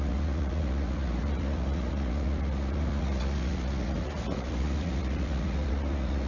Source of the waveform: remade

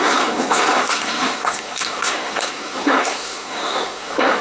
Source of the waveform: remade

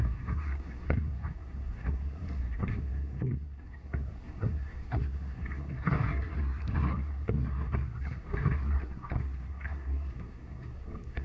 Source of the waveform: remade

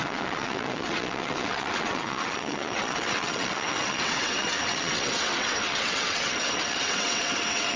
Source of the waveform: remade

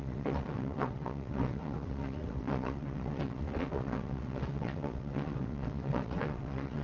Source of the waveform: remade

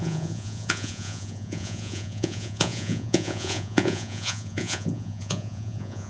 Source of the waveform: remade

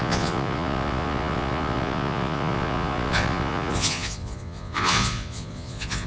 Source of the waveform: remade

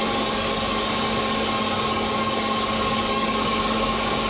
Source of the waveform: remade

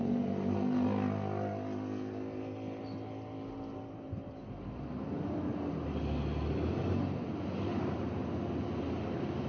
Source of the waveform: recorded